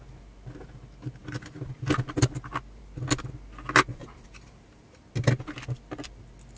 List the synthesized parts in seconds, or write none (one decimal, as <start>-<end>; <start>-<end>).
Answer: 3.9-5.0